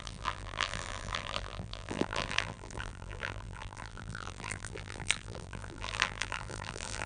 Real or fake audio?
fake